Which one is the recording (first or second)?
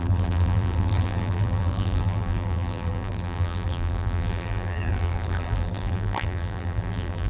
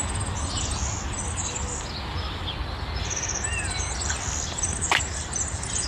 second